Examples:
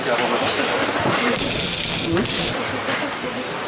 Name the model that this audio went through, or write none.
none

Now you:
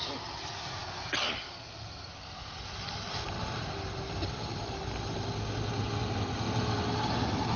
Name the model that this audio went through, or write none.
none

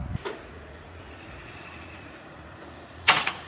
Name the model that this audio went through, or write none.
vocoder, Vocos